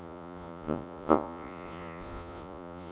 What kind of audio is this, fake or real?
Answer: fake